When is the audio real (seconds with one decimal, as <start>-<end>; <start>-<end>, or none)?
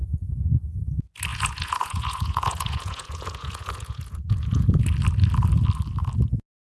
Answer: 0.0-1.3; 4.8-6.7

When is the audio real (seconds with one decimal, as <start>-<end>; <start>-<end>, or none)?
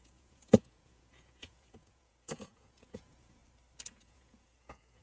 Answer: 3.4-3.9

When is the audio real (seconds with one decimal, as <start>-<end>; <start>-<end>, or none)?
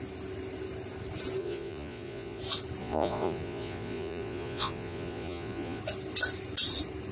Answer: 0.0-1.4; 2.4-2.8; 5.8-7.1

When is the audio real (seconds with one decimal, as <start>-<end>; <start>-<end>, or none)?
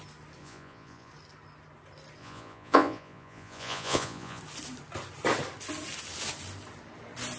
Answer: 0.0-0.4; 1.1-2.2; 4.4-7.4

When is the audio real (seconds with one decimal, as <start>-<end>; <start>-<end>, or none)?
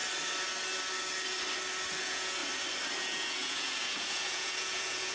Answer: 0.0-2.0; 2.4-3.0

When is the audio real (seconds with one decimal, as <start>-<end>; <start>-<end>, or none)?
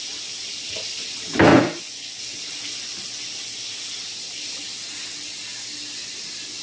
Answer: 0.0-1.5; 2.2-6.6